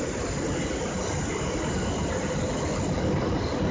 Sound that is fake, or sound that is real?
real